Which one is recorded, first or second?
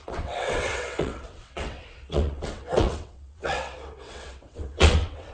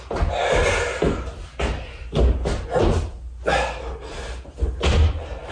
second